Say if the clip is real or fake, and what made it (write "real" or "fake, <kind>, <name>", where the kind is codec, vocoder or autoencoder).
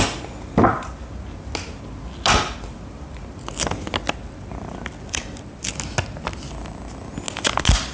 real